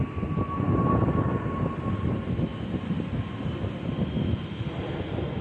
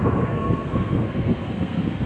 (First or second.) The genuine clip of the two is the first